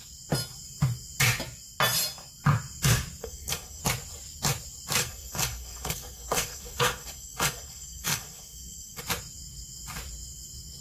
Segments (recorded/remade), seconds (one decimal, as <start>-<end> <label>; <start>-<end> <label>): 0.0-3.2 recorded; 3.2-3.8 remade; 3.8-5.0 recorded; 5.0-9.0 remade; 9.0-10.8 recorded